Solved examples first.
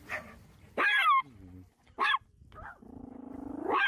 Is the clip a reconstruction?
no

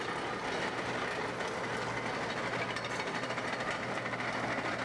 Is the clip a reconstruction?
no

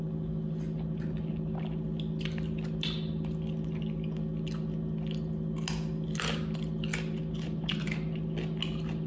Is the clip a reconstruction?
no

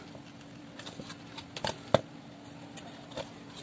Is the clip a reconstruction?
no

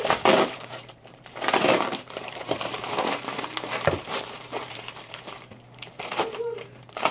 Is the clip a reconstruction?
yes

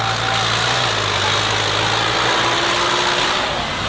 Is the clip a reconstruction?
no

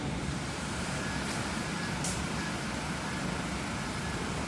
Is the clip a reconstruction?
yes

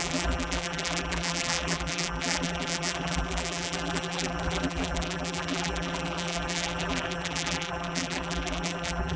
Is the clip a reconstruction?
yes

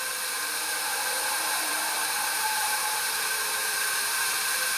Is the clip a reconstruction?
yes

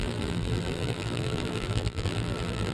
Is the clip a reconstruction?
yes